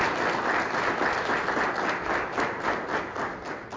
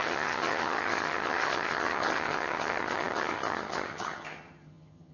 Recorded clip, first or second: first